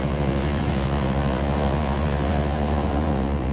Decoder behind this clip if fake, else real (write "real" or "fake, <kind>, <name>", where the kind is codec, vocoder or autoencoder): fake, vocoder, Vocos